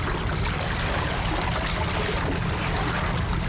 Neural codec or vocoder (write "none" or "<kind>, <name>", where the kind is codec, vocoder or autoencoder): none